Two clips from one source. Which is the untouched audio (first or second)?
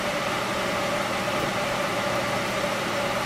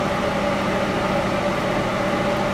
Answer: second